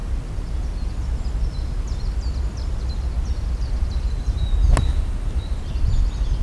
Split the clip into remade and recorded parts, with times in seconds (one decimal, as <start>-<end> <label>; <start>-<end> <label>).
0.0-4.9 recorded; 4.9-5.6 remade; 5.6-6.4 recorded